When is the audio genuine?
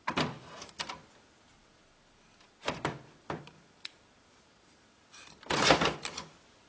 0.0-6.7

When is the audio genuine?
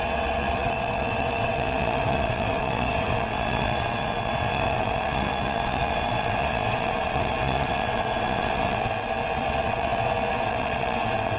none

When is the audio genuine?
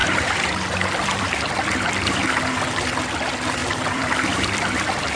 2.1-3.6; 4.8-5.2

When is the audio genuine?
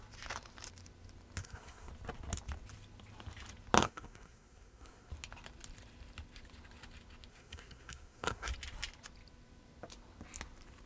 0.0-1.4; 1.9-3.8; 5.1-7.3; 8.5-10.9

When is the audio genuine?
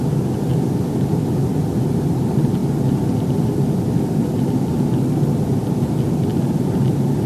0.0-2.6; 4.7-7.3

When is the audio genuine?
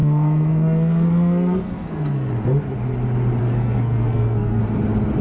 2.3-3.4; 4.6-5.2